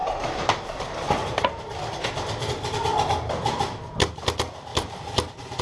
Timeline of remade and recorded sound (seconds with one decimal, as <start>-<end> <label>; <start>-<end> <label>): 0.0-1.6 remade; 1.6-4.7 recorded; 4.7-5.6 remade